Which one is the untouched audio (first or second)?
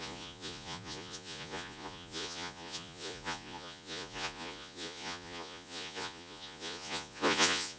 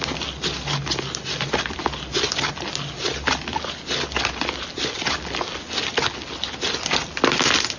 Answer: second